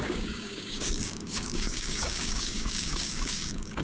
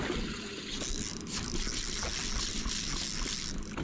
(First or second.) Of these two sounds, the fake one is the first